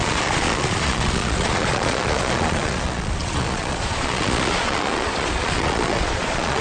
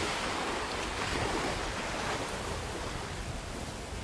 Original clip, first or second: second